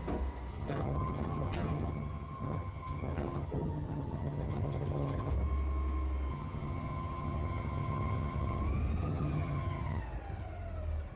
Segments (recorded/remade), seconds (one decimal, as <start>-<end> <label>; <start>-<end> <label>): 0.0-0.5 recorded; 0.5-5.3 remade; 5.3-6.3 recorded; 6.3-8.6 remade; 8.6-9.0 recorded; 9.0-10.0 remade; 10.0-11.2 recorded